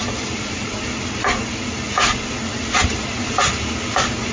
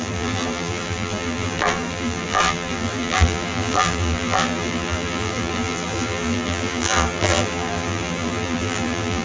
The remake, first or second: second